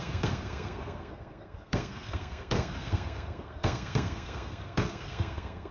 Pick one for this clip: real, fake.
fake